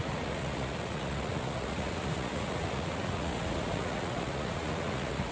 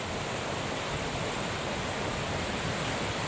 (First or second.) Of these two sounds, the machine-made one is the first